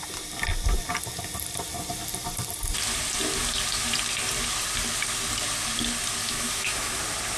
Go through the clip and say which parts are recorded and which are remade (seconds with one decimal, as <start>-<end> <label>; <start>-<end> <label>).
0.0-6.2 recorded; 6.2-7.0 remade; 7.0-7.4 recorded